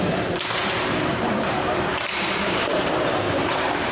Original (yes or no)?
no